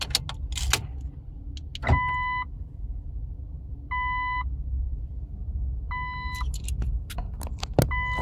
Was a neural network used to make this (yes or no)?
no